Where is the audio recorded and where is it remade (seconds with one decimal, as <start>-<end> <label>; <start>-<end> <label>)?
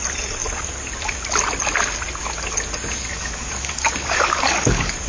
0.0-3.1 recorded; 3.1-5.1 remade